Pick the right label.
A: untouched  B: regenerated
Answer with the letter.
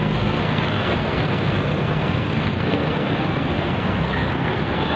B